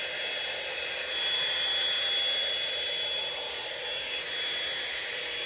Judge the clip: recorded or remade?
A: recorded